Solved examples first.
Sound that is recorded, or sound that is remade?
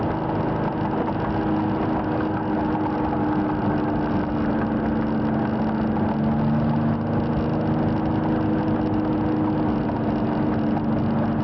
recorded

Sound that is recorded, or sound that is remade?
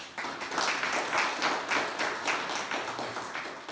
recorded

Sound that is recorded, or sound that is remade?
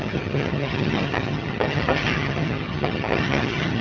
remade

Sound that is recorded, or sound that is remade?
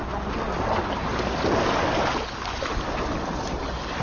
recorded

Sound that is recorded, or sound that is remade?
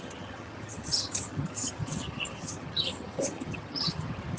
remade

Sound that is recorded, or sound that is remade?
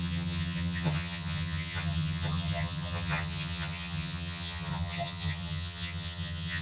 remade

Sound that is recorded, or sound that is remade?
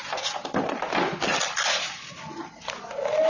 recorded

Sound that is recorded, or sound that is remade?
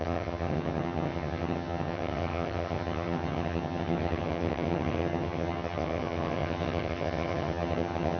remade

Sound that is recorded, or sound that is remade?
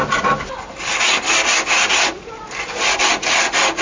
recorded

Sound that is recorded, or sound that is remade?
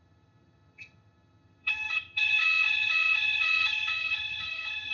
remade